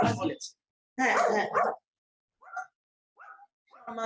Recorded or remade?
recorded